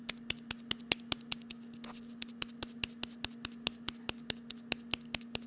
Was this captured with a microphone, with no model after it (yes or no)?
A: yes